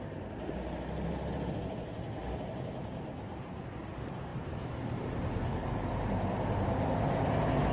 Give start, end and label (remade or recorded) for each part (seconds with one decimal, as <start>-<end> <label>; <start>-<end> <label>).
0.0-4.3 recorded; 4.3-7.1 remade; 7.1-7.7 recorded